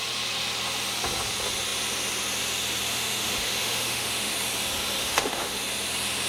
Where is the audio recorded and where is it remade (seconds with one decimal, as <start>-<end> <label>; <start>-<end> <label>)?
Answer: 0.0-2.9 recorded; 2.9-4.3 remade; 4.3-5.0 recorded; 5.0-5.6 remade; 5.6-6.3 recorded